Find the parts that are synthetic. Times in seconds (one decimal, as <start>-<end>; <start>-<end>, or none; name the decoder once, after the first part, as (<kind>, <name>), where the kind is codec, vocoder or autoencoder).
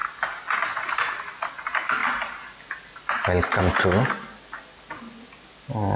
0.0-1.5 (vocoder, BigVGAN v2); 2.0-3.6